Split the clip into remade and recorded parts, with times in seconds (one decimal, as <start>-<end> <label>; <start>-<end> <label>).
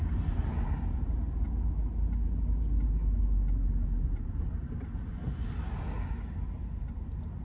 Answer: 0.0-7.4 recorded